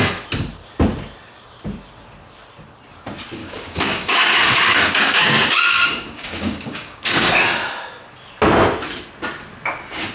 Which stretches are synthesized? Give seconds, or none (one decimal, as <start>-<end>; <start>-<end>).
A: 3.4-7.3